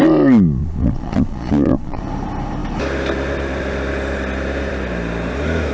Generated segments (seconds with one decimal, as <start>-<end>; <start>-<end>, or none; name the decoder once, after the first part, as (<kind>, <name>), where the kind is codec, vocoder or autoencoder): 0.6-2.0 (vocoder, Vocos)

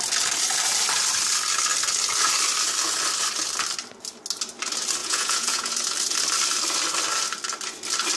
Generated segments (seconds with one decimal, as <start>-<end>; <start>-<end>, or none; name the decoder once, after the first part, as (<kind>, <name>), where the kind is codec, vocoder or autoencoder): 5.0-5.7 (vocoder, Vocos)

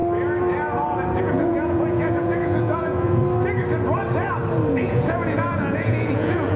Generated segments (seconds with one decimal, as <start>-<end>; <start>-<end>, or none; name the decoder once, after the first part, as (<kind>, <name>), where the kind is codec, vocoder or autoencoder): 1.2-3.2 (vocoder, Vocos); 4.7-6.6